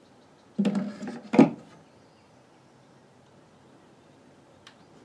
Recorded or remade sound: recorded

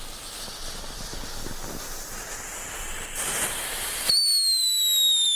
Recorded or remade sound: recorded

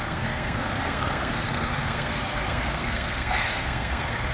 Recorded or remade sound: remade